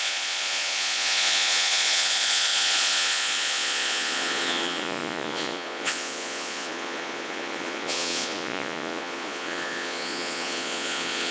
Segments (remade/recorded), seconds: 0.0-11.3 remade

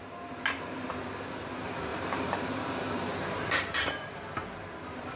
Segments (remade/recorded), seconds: 0.0-1.9 recorded; 1.9-4.6 remade; 4.6-5.2 recorded

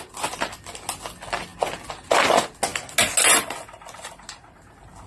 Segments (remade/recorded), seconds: 0.0-5.1 recorded